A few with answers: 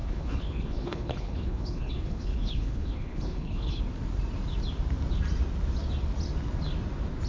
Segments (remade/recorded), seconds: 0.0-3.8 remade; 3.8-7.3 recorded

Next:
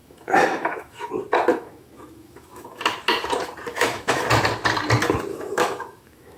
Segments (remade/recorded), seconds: 0.0-1.1 remade; 1.1-1.5 recorded; 1.5-2.8 remade; 2.8-3.7 recorded; 3.7-4.2 remade; 4.2-5.3 recorded; 5.3-6.4 remade